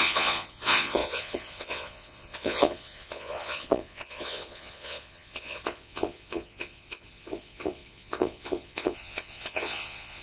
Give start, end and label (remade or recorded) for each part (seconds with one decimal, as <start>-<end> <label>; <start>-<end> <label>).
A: 0.0-10.2 remade